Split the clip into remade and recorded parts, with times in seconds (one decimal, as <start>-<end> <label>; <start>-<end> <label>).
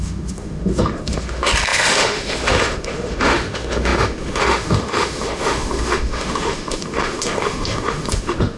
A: 0.0-8.6 remade